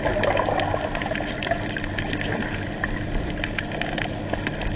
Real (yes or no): yes